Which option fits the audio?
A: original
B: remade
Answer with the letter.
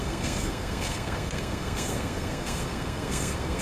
B